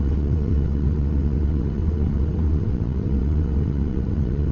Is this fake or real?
fake